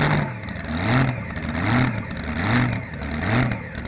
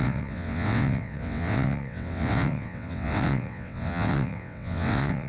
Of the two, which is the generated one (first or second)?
second